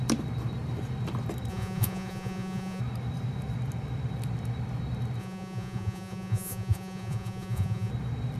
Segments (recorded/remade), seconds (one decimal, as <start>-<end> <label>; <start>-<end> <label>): 0.0-1.5 recorded; 1.5-2.8 remade; 2.8-5.2 recorded; 5.2-7.9 remade; 7.9-8.4 recorded